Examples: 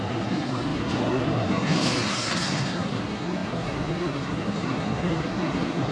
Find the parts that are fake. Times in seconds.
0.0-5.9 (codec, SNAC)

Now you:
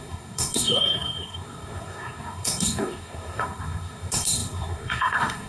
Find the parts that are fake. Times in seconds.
0.0-5.5 (codec, SNAC)

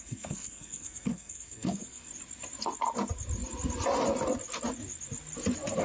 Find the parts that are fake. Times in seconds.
0.0-2.1 (codec, SNAC)

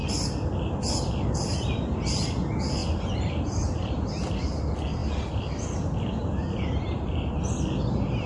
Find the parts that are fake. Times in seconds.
none

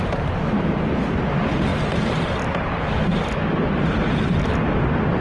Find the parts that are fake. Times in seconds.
none

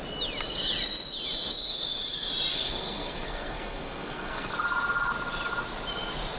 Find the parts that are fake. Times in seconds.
2.5-4.5 (codec, SNAC)